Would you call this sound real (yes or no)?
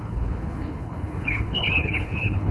no